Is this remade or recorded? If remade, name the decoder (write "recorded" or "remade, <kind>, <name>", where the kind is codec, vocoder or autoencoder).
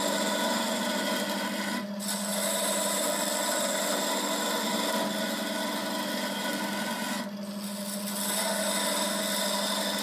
recorded